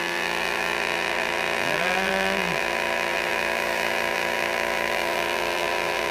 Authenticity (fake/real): fake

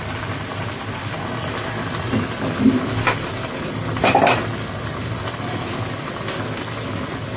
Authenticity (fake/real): real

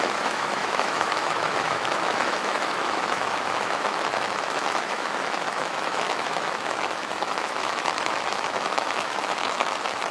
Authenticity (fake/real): fake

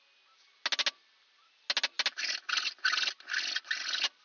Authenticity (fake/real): real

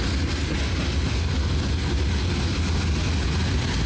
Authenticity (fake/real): real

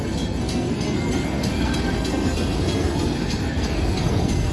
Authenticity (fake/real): fake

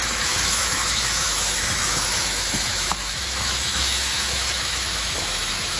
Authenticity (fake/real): fake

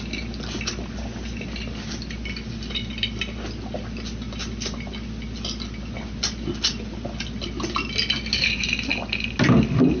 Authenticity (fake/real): real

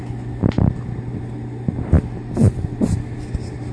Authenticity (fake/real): real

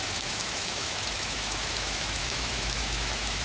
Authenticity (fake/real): fake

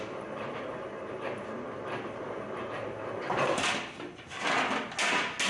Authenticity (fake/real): real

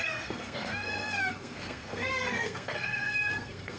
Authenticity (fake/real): fake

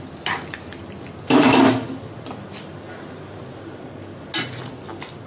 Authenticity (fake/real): real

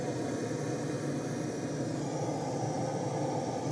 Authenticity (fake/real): real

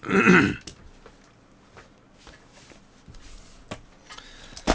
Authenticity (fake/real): real